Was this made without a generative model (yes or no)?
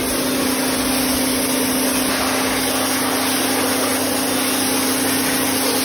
yes